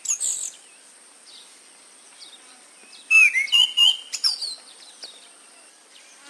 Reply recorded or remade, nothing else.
recorded